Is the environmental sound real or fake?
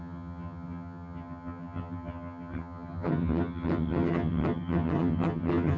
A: fake